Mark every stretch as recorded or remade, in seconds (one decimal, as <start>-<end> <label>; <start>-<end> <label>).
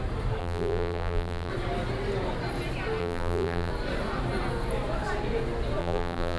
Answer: 0.0-0.4 recorded; 0.4-1.5 remade; 1.5-3.0 recorded; 3.0-3.7 remade; 3.7-5.8 recorded; 5.8-6.4 remade